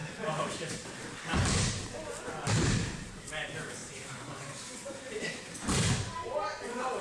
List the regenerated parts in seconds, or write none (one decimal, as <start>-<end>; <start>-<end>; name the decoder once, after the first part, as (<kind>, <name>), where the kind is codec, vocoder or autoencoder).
0.0-1.2 (vocoder, BigVGAN v2); 2.6-3.2; 3.8-5.0